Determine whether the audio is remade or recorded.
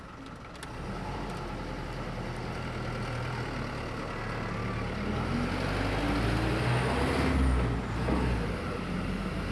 recorded